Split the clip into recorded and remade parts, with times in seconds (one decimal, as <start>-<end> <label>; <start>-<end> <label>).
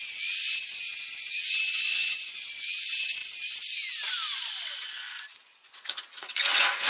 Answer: 0.0-3.2 remade; 3.2-5.4 recorded; 5.4-6.9 remade